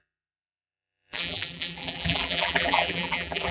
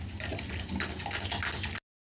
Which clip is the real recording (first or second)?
second